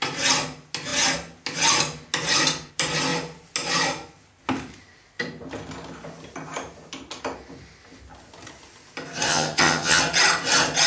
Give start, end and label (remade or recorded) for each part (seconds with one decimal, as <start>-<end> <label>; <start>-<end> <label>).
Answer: 0.0-9.3 recorded; 9.3-10.0 remade; 10.0-10.9 recorded